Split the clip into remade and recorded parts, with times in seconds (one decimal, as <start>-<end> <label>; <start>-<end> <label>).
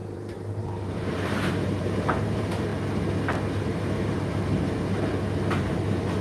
0.0-2.7 remade; 2.7-3.3 recorded; 3.3-6.2 remade